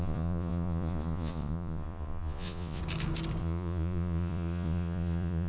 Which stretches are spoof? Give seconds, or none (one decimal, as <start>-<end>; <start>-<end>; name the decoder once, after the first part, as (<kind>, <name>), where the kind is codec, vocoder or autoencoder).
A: 0.0-2.8 (vocoder, Vocos); 3.4-5.5

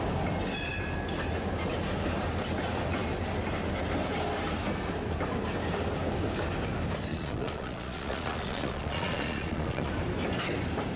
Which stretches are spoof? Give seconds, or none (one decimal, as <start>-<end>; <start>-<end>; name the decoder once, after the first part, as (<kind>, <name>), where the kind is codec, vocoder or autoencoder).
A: 7.1-9.9 (vocoder, Vocos)

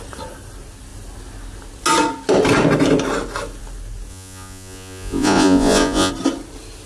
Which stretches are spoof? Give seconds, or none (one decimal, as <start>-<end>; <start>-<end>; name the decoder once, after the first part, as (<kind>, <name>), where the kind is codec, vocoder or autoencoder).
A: 4.1-6.1 (vocoder, Vocos)

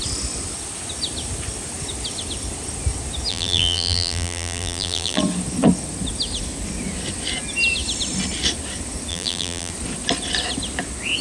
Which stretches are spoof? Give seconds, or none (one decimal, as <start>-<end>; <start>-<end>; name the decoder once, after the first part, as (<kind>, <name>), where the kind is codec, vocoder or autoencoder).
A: 3.3-5.2 (vocoder, BigVGAN v2); 9.1-9.7

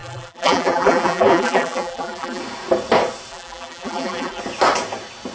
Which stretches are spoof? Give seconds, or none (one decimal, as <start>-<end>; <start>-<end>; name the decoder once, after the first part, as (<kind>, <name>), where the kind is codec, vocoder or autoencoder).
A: 0.0-2.4 (vocoder, BigVGAN v2); 3.3-4.4